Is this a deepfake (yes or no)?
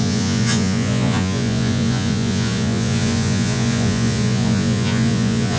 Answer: yes